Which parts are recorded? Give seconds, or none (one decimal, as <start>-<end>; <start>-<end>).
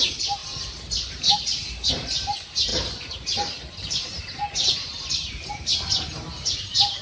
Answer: none